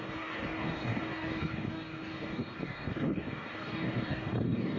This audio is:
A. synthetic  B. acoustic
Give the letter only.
A